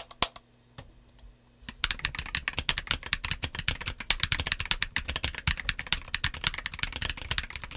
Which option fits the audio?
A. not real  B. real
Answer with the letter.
B